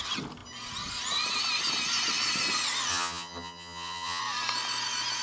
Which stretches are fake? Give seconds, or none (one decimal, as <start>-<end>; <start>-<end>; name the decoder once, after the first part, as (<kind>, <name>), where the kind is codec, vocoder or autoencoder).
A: 2.9-4.2 (vocoder, HiFi-GAN)